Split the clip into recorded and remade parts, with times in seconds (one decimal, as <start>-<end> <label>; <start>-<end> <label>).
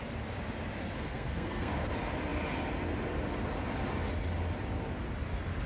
0.0-0.8 recorded; 0.8-1.9 remade; 1.9-5.7 recorded